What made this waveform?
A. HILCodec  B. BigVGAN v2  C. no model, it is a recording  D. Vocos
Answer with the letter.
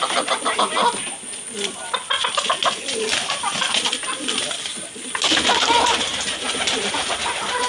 C